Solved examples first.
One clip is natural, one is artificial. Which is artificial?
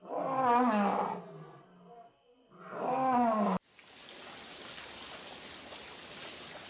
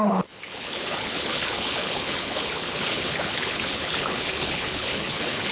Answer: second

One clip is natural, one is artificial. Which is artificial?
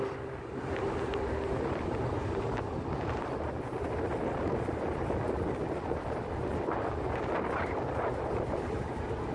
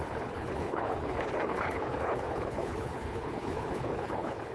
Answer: second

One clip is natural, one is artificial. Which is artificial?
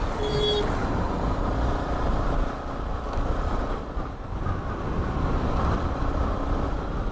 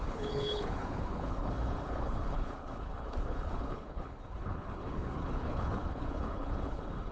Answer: second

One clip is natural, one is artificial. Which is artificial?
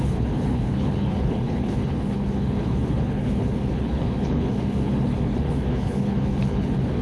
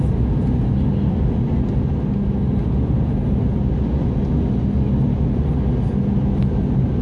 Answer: first